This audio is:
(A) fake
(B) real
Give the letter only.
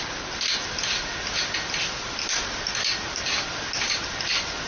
B